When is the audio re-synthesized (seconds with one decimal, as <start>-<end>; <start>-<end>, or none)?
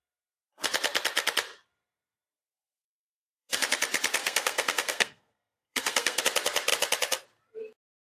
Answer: 2.9-3.6; 4.2-6.2